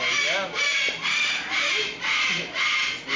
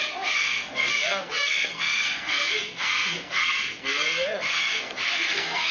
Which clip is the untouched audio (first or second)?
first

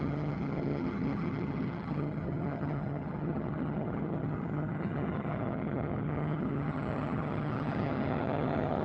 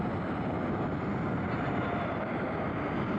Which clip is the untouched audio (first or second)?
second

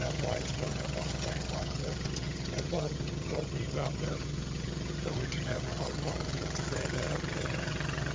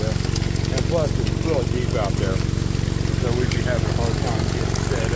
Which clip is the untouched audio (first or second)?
second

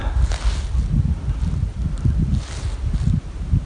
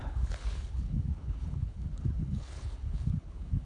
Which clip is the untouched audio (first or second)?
first